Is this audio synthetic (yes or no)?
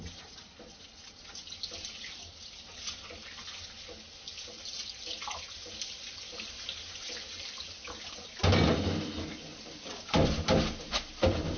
no